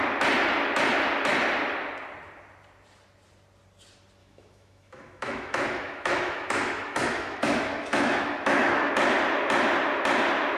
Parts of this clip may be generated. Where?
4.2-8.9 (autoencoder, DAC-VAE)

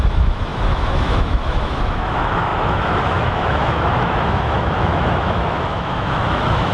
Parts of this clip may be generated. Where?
0.0-6.7 (autoencoder, DAC-VAE)

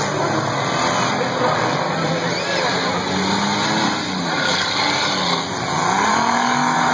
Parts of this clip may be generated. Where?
6.1-6.9 (autoencoder, DAC-VAE)

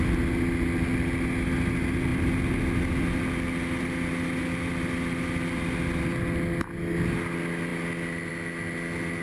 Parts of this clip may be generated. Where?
none

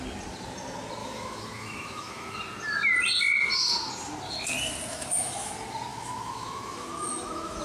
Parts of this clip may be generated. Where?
1.0-2.4 (autoencoder, DAC-VAE); 4.9-5.5; 5.9-7.6